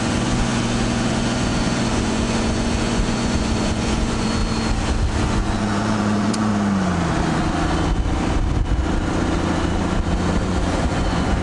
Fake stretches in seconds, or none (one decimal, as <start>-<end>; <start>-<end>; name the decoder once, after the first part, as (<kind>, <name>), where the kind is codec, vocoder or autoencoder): 0.0-4.4 (vocoder, Vocos); 5.2-6.5; 10.4-11.4